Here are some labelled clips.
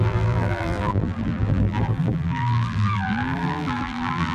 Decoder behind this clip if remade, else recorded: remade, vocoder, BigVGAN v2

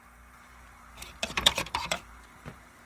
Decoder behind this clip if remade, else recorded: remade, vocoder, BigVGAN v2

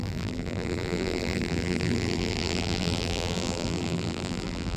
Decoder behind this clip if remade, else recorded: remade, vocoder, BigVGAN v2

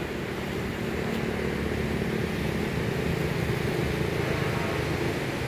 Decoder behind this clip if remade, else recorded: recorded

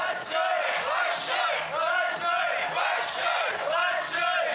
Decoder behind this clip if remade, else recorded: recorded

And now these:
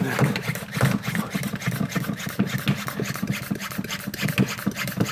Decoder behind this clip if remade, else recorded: recorded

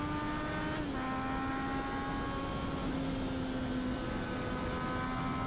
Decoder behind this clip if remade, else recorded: recorded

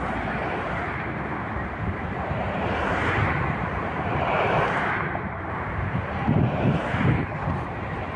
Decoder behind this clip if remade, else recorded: remade, vocoder, BigVGAN v2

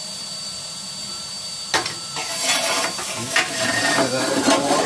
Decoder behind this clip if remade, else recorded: remade, vocoder, BigVGAN v2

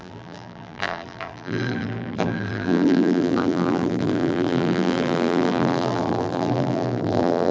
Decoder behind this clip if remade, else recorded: remade, vocoder, BigVGAN v2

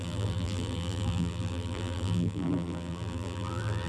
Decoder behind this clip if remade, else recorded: remade, vocoder, BigVGAN v2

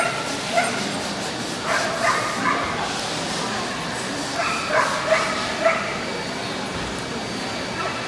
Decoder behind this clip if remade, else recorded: recorded